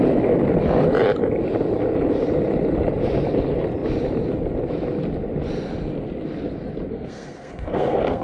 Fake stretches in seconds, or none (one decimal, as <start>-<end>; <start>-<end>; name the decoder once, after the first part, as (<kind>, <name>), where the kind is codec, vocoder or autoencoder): 6.9-8.2 (codec, SNAC)